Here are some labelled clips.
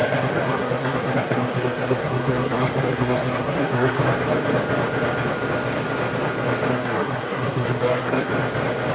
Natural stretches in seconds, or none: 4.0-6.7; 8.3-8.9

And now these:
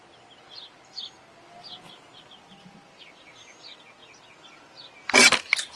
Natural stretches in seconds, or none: 0.0-5.8

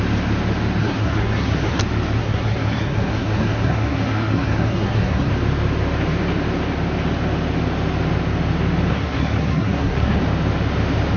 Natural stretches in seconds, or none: 0.0-0.8; 1.8-2.2; 5.3-8.9; 10.2-11.2

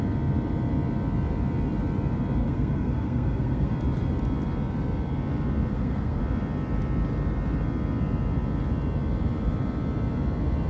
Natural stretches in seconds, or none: 0.0-2.4; 3.7-5.7; 6.2-10.7